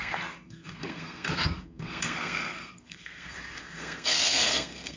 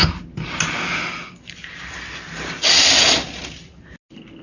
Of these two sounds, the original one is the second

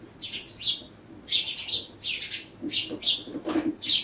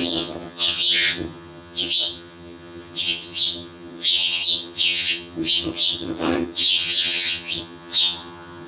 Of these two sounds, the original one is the first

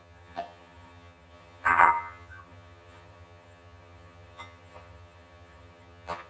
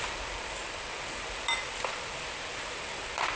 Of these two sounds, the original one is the second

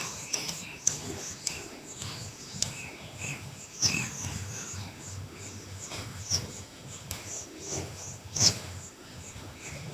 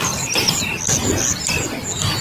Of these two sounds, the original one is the second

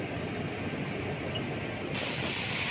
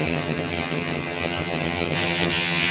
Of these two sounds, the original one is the first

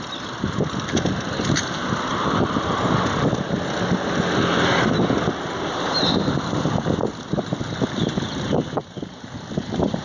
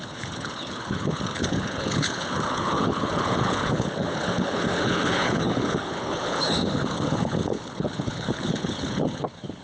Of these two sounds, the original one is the first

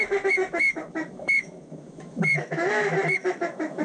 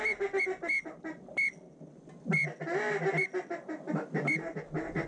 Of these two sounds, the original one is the second